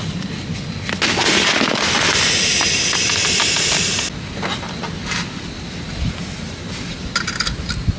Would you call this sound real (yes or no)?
yes